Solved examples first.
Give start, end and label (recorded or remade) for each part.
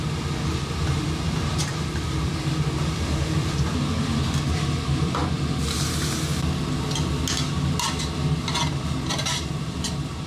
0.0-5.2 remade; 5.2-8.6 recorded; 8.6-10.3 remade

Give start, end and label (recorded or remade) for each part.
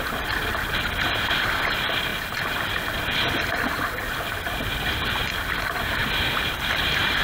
0.0-6.0 recorded; 6.0-7.2 remade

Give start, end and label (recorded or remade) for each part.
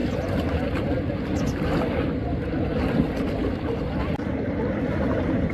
0.0-5.5 recorded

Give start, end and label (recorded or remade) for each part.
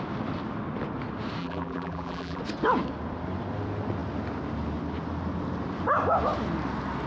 0.0-1.4 recorded; 1.4-2.4 remade; 2.4-7.1 recorded